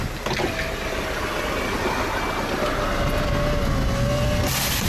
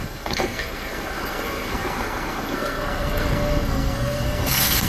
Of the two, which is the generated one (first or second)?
second